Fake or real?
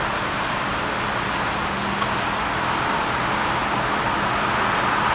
real